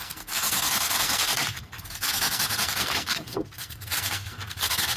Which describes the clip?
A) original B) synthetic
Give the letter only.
B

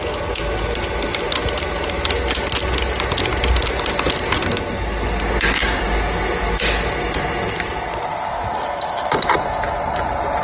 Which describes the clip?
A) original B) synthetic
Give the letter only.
A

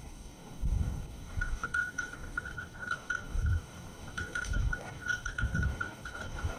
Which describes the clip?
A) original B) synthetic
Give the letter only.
B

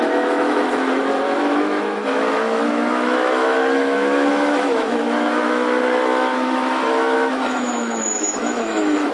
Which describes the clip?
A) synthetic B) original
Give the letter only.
A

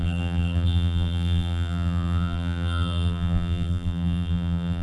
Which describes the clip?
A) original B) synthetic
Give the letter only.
B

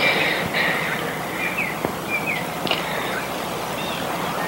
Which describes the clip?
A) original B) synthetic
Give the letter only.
B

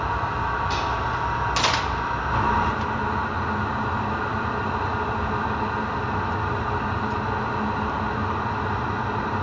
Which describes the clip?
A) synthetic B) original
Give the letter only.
B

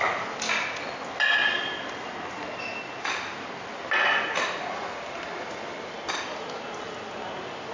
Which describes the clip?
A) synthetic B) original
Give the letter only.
B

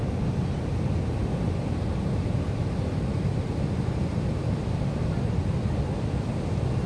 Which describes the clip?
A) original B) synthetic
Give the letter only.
A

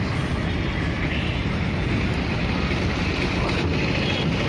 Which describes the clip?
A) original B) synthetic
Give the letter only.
A